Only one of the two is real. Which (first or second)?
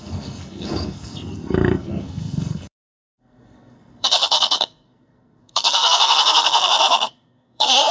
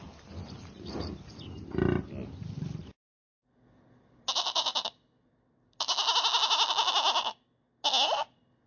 second